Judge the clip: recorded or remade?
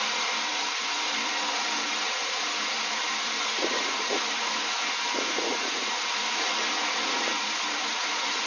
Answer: remade